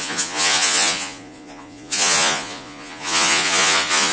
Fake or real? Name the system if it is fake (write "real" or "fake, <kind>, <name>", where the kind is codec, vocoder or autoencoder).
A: fake, vocoder, Vocos